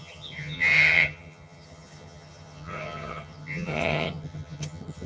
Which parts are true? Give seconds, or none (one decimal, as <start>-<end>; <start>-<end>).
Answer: none